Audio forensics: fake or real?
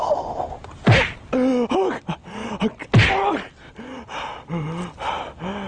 real